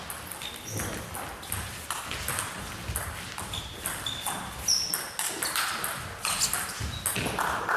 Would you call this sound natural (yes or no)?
yes